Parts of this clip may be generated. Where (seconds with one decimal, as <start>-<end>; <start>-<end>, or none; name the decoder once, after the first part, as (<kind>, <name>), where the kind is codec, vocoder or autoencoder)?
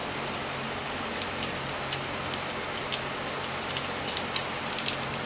none